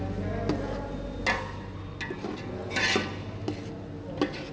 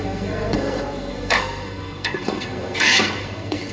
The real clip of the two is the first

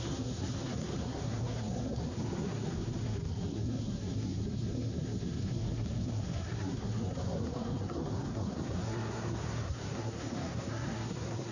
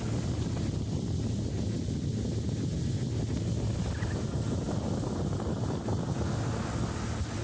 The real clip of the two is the second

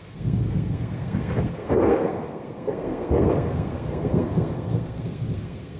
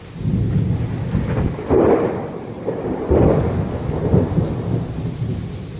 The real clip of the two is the second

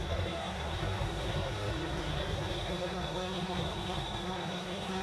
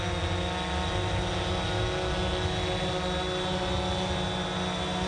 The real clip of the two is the second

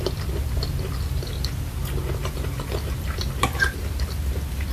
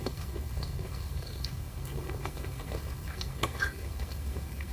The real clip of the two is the first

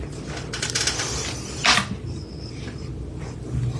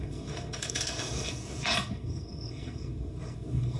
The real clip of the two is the first